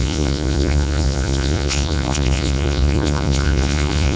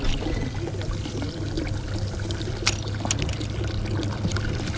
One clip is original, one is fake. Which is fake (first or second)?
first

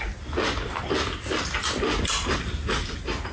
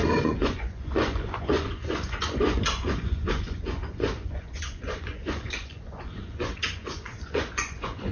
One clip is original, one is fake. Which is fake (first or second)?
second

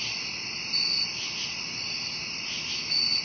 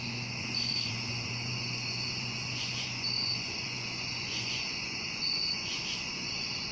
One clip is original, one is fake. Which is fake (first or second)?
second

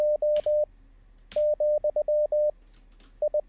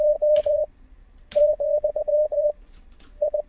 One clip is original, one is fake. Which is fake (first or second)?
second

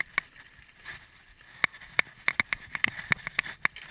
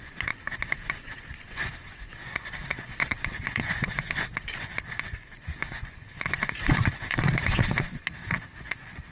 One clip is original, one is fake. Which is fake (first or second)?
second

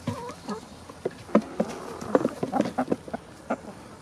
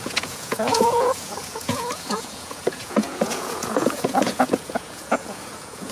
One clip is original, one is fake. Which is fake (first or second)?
second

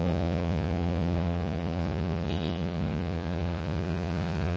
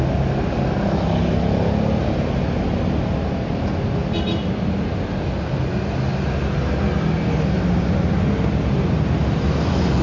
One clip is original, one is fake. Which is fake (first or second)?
first